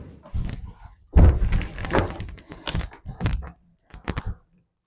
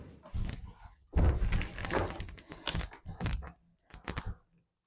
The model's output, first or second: first